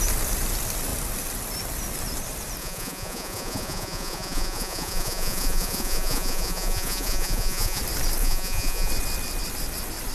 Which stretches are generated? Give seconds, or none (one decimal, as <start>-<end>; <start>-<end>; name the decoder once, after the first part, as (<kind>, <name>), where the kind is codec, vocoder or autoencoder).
2.6-7.8 (vocoder, Vocos); 8.2-8.9